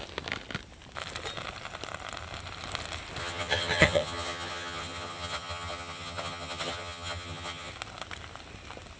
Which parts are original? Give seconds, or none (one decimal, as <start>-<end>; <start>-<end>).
0.0-3.2; 7.7-9.0